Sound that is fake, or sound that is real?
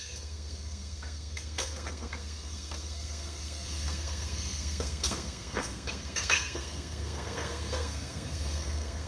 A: fake